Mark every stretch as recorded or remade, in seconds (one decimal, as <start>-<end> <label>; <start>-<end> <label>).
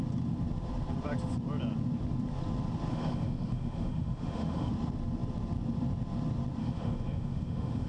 0.0-2.9 recorded; 2.9-4.7 remade; 4.7-6.6 recorded; 6.6-7.9 remade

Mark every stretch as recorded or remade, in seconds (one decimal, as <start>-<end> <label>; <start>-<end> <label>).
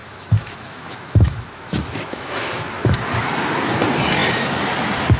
0.0-3.1 remade; 3.1-5.2 recorded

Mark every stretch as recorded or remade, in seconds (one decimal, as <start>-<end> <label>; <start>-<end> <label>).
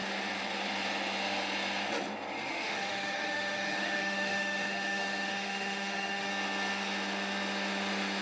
0.0-2.5 recorded; 2.5-6.3 remade; 6.3-8.2 recorded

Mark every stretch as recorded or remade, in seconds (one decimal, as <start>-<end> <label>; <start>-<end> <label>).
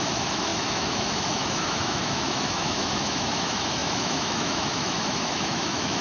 0.0-6.0 remade